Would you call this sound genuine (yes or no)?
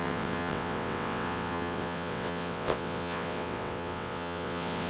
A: no